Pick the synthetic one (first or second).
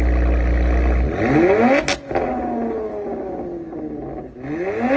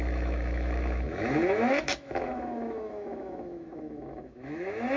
second